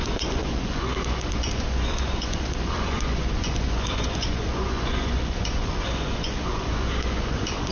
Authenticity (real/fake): fake